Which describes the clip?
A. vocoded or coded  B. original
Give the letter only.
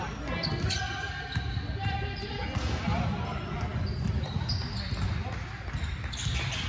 B